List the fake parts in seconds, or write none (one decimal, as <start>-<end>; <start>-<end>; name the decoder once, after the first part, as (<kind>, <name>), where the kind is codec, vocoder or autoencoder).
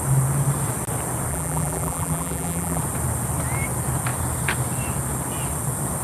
1.3-2.8 (vocoder, BigVGAN v2)